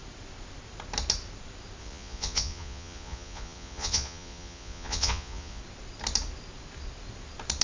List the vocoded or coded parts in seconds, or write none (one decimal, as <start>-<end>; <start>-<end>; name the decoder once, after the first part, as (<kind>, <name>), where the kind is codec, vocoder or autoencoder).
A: 1.8-5.6 (vocoder, Vocos)